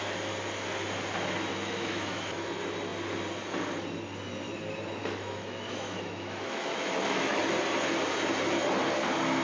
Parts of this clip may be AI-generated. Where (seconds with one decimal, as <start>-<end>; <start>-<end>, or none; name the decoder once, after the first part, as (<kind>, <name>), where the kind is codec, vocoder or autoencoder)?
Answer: 1.5-2.5 (autoencoder, DAC-VAE); 5.0-7.4